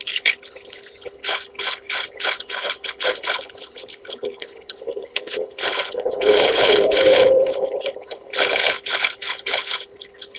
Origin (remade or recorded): remade